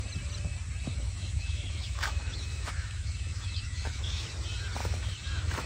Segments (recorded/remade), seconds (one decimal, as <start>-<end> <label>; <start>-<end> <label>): 0.0-0.9 recorded; 0.9-4.3 remade; 4.3-4.8 recorded; 4.8-5.7 remade